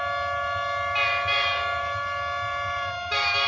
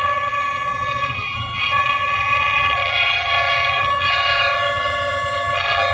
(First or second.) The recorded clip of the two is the first